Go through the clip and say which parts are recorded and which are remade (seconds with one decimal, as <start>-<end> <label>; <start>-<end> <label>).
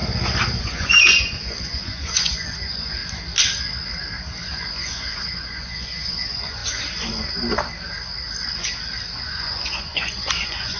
0.0-0.6 recorded; 0.6-3.0 remade; 3.0-4.7 recorded; 4.7-6.6 remade; 6.6-9.2 recorded; 9.2-10.8 remade